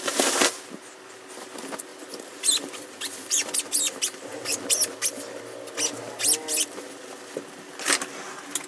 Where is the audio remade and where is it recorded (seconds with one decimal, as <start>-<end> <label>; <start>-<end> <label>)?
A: 0.0-8.7 recorded